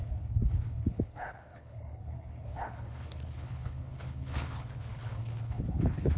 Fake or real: fake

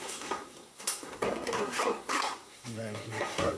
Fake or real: fake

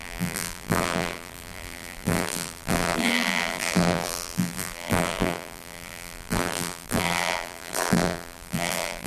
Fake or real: fake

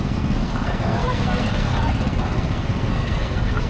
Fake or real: fake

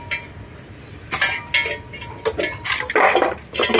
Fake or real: real